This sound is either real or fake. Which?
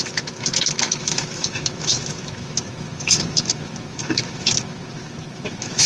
fake